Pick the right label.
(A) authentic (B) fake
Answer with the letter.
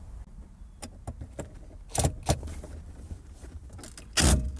A